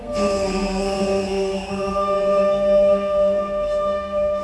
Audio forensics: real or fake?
fake